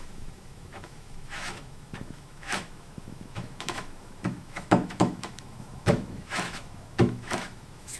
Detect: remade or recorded remade